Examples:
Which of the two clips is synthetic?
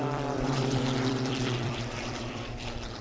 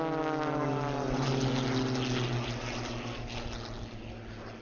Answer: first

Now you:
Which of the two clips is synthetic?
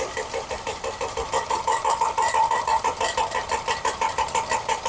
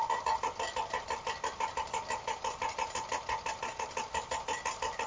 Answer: first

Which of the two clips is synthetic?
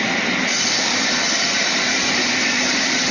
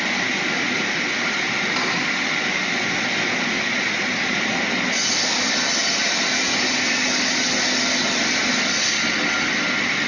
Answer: first